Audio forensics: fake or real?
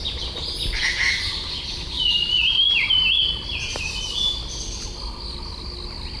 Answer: real